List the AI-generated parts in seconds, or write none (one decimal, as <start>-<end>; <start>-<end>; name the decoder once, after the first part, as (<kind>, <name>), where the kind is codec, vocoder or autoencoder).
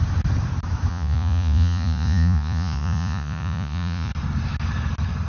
0.9-4.1 (vocoder, Vocos)